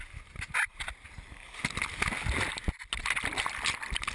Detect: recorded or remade recorded